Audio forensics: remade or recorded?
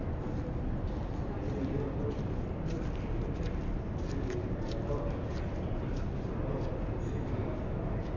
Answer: recorded